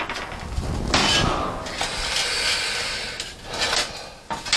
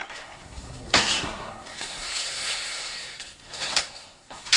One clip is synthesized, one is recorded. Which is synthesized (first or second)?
second